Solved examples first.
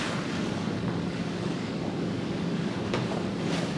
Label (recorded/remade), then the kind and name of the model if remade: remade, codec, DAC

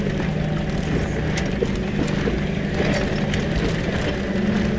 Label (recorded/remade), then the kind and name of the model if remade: recorded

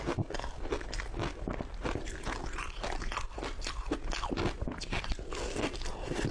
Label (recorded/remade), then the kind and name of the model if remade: recorded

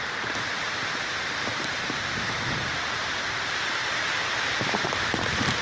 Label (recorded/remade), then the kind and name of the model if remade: remade, vocoder, BigVGAN v2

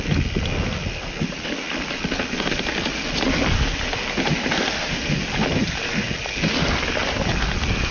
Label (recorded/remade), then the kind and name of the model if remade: recorded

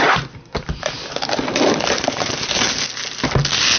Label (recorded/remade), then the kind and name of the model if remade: recorded